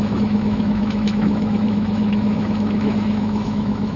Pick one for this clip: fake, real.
fake